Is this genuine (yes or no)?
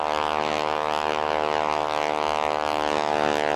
yes